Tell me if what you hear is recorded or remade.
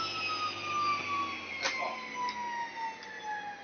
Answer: recorded